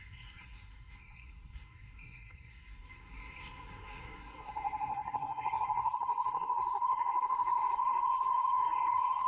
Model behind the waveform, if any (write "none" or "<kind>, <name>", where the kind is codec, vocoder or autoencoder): codec, SNAC